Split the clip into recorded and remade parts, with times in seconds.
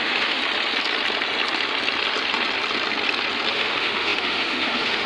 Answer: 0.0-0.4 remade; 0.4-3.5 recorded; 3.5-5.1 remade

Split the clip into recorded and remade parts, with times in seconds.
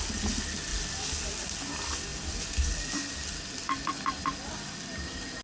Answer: 0.0-2.1 recorded; 2.1-5.4 remade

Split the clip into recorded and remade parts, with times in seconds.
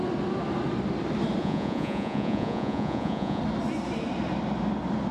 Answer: 0.0-1.4 recorded; 1.4-3.4 remade; 3.4-5.1 recorded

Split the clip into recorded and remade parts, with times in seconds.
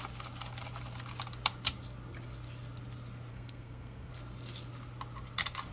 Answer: 0.0-3.3 recorded; 3.3-4.1 remade; 4.1-5.7 recorded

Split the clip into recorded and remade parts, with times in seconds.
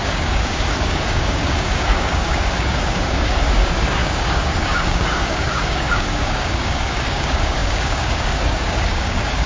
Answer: 0.0-9.5 remade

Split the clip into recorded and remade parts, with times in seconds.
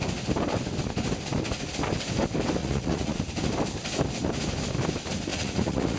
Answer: 0.0-2.6 recorded; 2.6-3.2 remade; 3.2-5.3 recorded; 5.3-6.0 remade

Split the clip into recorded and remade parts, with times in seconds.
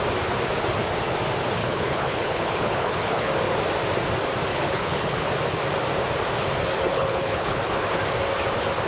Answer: 0.0-1.6 recorded; 1.6-3.3 remade; 3.3-4.5 recorded; 4.5-5.3 remade; 5.3-6.9 recorded; 6.9-8.0 remade; 8.0-8.9 recorded